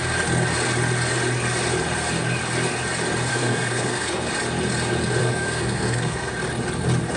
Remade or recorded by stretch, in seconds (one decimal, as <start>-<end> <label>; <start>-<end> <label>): 0.0-3.3 recorded; 3.3-4.3 remade; 4.3-5.2 recorded; 5.2-6.3 remade; 6.3-7.2 recorded